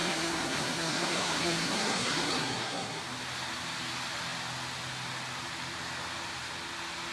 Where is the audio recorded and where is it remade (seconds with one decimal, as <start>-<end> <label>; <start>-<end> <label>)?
0.0-3.0 remade; 3.0-7.1 recorded